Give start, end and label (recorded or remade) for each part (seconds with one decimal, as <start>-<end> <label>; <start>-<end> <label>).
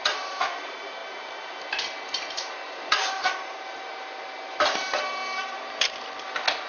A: 0.0-6.7 recorded